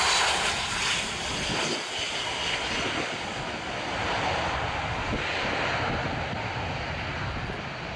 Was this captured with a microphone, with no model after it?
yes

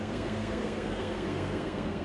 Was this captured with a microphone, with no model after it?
no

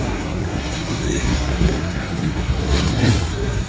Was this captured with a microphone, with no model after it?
no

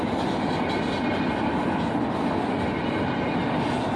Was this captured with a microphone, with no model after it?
yes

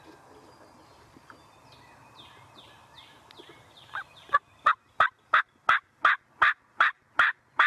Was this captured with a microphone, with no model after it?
yes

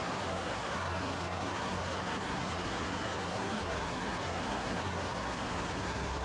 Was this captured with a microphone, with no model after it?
no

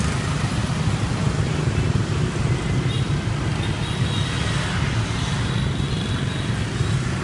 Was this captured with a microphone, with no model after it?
yes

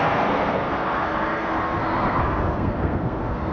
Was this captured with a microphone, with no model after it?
no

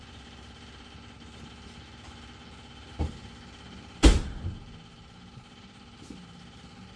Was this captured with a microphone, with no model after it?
yes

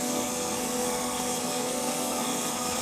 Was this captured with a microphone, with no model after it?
no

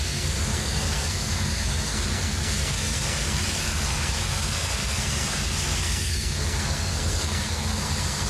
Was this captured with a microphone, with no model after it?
no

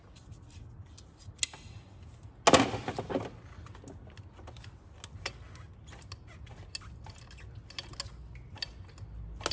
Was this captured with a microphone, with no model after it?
yes